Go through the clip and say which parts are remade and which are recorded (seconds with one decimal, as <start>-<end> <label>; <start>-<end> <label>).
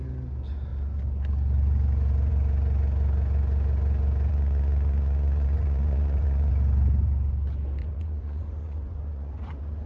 0.0-4.3 recorded; 4.3-6.5 remade; 6.5-7.8 recorded; 7.8-9.9 remade